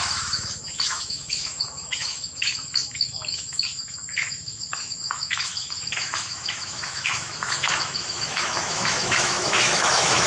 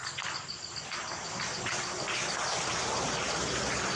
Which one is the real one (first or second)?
second